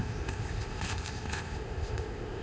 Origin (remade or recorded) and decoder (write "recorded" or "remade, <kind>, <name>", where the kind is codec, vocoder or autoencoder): remade, codec, ZipCodec